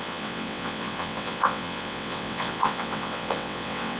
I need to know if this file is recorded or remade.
remade